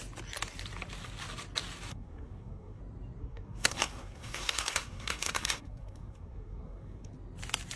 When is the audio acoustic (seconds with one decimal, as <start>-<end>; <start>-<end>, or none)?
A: 0.0-1.9; 2.8-3.2; 7.1-7.8